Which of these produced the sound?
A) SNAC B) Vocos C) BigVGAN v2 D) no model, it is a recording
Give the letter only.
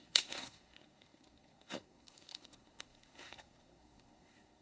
A